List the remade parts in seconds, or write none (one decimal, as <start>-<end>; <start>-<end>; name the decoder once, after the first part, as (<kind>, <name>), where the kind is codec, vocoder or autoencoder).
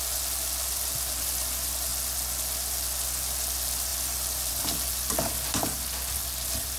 none